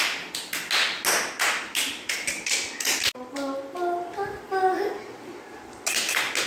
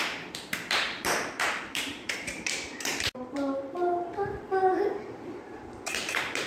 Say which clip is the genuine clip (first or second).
first